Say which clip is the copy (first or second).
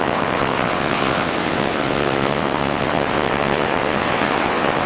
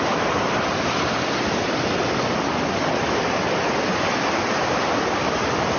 first